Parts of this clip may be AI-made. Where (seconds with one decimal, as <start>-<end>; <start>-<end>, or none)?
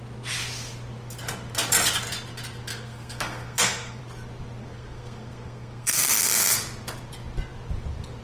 2.7-4.0; 4.6-6.2